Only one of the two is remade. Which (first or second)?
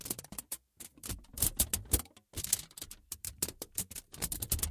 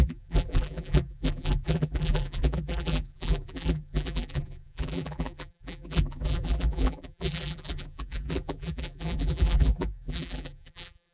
second